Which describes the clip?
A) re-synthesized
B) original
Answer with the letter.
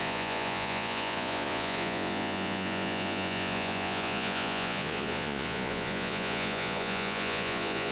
A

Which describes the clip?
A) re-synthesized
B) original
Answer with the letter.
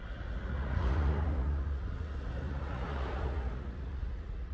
A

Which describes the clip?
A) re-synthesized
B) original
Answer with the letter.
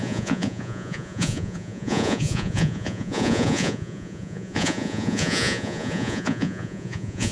A